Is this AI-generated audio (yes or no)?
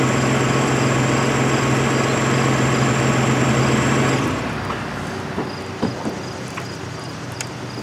no